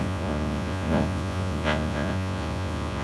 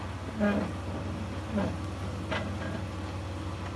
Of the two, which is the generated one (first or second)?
first